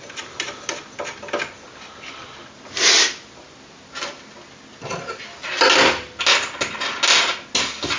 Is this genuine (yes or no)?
yes